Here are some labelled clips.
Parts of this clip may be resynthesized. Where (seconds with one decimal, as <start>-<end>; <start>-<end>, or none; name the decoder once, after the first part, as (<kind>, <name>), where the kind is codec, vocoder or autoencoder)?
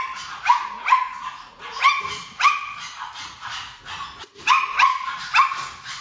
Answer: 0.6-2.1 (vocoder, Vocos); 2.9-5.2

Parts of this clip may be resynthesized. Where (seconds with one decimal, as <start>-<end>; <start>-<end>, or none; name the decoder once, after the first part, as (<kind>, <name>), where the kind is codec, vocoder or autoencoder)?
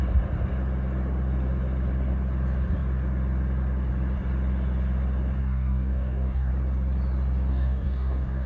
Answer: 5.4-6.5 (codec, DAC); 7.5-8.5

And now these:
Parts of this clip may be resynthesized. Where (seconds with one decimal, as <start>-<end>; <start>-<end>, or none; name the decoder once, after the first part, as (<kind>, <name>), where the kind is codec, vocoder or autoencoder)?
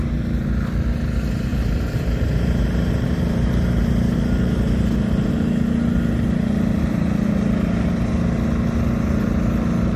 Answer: 1.5-5.3 (vocoder, BigVGAN v2)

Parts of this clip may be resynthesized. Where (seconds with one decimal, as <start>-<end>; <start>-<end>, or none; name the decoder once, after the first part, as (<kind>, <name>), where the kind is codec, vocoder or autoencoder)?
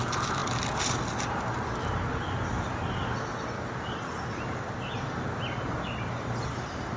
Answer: none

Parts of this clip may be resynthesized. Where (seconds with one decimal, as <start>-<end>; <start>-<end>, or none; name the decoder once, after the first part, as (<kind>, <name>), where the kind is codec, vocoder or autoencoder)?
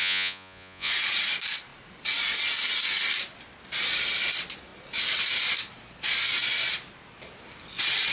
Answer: 0.0-0.9 (vocoder, Vocos)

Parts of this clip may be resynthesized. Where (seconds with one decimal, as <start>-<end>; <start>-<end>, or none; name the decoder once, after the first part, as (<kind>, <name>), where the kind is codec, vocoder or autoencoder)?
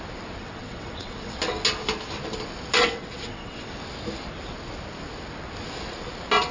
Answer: 0.4-1.4 (vocoder, WaveNeXt); 2.8-3.7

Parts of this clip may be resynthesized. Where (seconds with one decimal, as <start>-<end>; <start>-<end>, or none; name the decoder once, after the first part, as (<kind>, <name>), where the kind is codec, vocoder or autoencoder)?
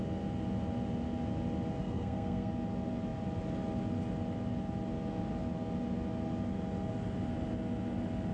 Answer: 1.8-2.5 (codec, SNAC)